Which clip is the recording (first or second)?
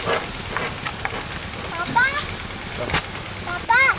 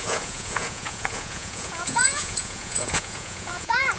first